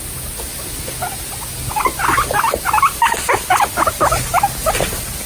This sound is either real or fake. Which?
real